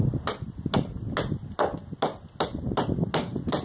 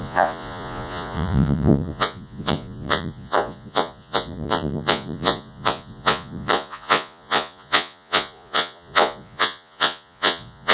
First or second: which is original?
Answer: first